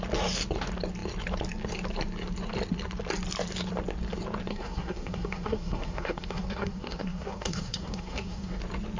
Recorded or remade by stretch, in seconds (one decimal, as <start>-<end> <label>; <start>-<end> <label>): 0.0-4.5 recorded; 4.5-8.6 remade; 8.6-9.0 recorded